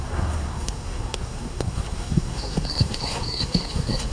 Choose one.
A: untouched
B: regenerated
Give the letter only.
B